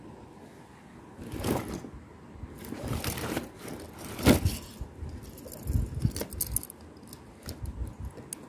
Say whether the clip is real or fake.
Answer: real